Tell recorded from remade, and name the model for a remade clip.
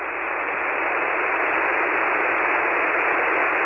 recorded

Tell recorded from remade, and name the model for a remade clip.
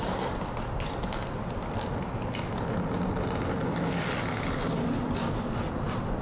recorded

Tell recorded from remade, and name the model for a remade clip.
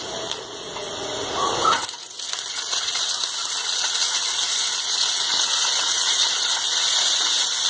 remade, vocoder, Vocos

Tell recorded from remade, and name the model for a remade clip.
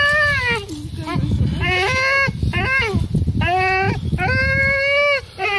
recorded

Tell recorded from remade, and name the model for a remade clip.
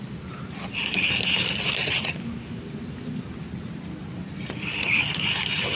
recorded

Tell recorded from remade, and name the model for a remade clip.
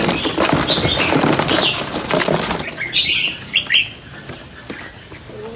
recorded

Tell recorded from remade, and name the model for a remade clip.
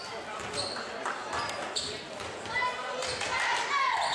recorded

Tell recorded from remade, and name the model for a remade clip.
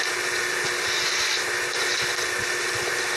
recorded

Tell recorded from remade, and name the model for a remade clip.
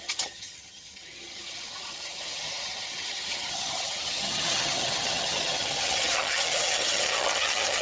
remade, vocoder, HiFi-GAN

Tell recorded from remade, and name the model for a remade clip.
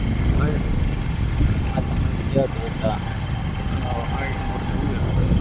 recorded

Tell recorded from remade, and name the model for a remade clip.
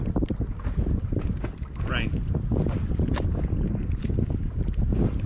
recorded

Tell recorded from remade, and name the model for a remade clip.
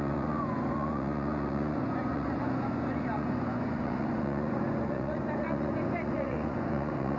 remade, vocoder, Vocos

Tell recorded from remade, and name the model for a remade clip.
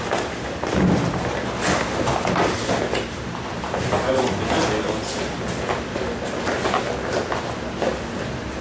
recorded